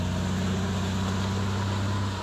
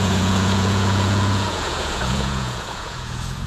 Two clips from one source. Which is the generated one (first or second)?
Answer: second